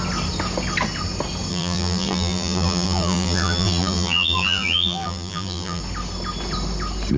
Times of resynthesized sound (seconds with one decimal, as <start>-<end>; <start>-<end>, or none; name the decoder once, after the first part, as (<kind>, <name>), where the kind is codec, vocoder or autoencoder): 1.5-5.8 (vocoder, BigVGAN v2)